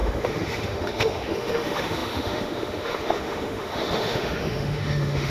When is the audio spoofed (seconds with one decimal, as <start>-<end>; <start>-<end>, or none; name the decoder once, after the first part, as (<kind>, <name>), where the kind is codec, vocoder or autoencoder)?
0.0-5.3 (autoencoder, DAC-VAE)